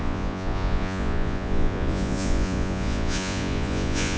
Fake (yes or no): yes